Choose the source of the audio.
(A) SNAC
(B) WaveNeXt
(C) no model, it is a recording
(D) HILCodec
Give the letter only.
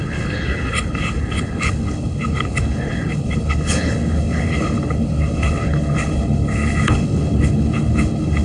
D